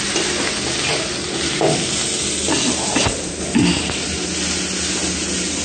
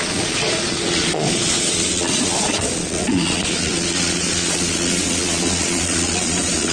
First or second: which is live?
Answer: first